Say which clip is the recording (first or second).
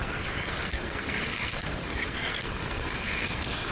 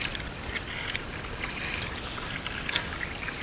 second